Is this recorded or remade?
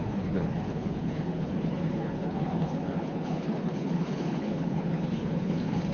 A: remade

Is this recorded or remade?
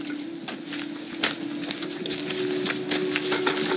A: recorded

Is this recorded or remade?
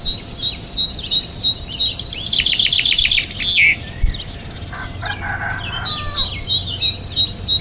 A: recorded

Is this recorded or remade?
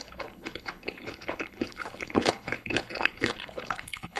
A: remade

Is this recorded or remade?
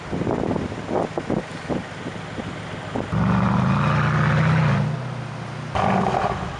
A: recorded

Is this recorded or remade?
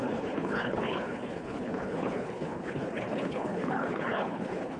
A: remade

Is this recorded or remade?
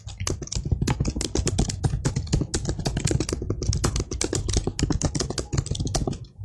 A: recorded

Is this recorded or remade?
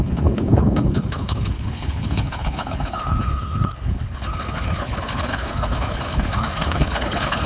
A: remade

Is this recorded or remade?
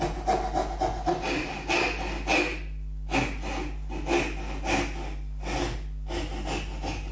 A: recorded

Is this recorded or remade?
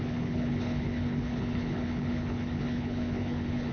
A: remade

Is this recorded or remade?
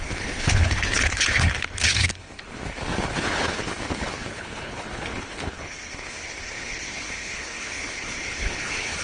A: remade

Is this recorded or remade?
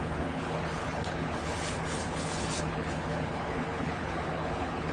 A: remade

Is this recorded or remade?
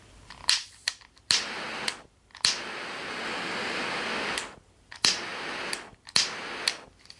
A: recorded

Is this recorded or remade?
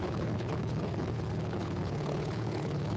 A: remade